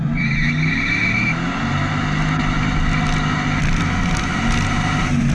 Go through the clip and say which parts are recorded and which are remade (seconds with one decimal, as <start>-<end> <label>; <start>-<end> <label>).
0.0-5.3 recorded